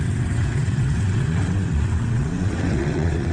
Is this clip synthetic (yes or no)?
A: yes